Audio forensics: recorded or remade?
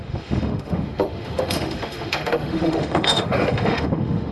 remade